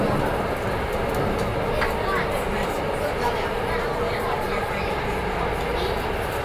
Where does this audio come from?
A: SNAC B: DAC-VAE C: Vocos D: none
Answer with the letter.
D